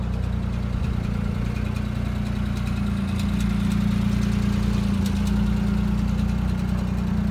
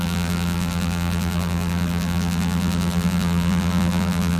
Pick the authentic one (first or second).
first